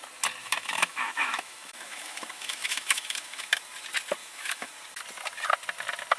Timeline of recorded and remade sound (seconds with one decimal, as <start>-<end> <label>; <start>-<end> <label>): 0.0-0.4 recorded; 0.4-3.5 remade; 3.5-4.2 recorded; 4.2-4.7 remade; 4.7-6.2 recorded